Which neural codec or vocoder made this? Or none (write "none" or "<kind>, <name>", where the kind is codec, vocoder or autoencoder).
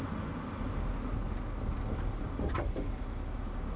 none